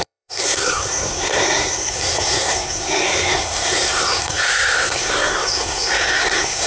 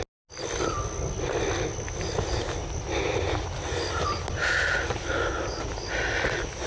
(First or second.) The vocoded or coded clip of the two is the first